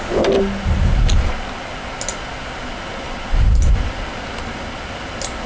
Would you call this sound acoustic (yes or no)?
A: yes